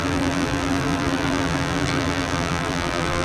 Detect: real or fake fake